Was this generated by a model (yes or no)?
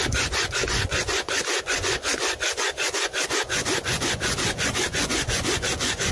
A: yes